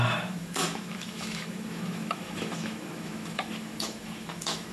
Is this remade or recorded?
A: remade